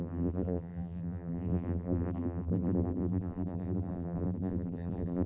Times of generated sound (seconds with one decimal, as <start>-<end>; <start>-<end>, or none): 0.0-5.3